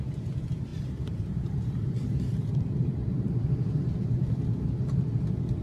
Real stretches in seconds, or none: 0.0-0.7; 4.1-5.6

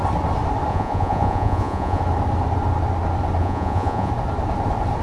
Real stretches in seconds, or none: 0.0-0.7; 2.0-3.4; 4.1-5.0

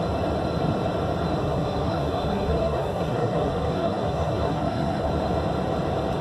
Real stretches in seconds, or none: 0.0-1.4; 5.1-6.2

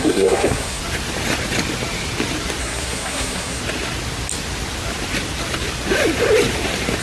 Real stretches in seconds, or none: 0.8-2.6; 3.6-7.0

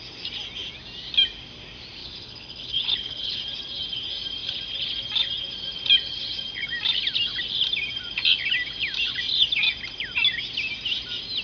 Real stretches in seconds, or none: 0.0-2.0; 3.4-11.4

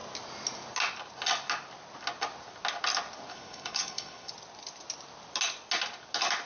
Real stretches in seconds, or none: 0.0-3.3; 4.3-6.5

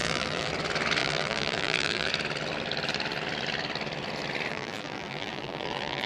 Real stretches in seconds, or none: 0.5-1.0; 2.1-4.5

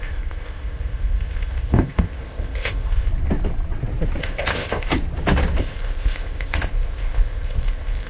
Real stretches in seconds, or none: 3.1-4.2; 4.9-5.6